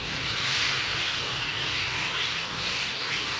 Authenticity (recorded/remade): remade